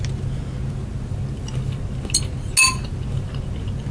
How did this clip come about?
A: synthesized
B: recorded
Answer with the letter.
B